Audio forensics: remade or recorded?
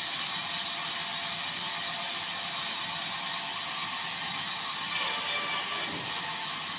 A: recorded